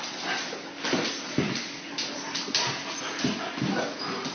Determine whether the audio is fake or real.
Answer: real